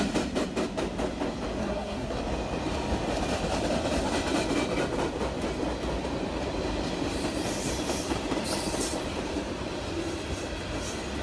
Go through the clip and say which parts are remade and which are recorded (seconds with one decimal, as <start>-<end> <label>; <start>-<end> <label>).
0.0-1.6 recorded; 1.6-2.2 remade; 2.2-11.2 recorded